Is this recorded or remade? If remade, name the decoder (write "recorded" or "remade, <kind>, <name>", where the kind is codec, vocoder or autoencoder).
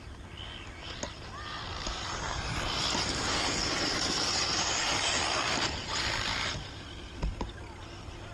recorded